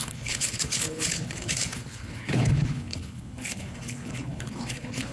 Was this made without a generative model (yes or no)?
no